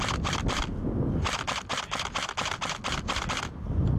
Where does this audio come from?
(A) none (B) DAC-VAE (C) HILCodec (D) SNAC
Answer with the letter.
A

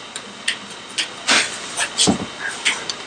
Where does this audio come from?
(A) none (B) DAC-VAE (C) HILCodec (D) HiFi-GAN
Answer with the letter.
A